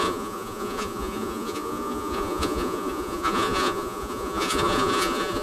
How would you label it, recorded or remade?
remade